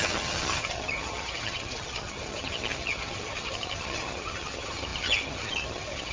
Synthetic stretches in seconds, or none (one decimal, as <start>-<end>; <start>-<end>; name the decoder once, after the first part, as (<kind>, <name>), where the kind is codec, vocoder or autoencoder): 0.0-6.1 (vocoder, HiFi-GAN)